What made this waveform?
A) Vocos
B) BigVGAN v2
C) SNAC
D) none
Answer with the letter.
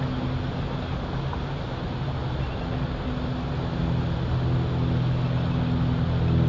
D